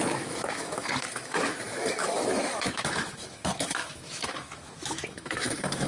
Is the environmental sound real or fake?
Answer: fake